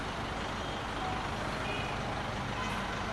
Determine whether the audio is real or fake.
real